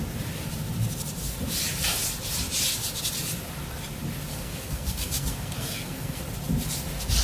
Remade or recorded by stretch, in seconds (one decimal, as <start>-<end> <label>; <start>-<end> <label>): 0.0-4.3 recorded; 4.3-6.2 remade; 6.2-7.2 recorded